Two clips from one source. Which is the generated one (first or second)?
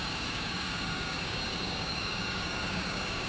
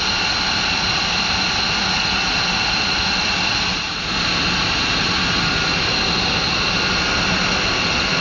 first